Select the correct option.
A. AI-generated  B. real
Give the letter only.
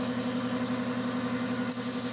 B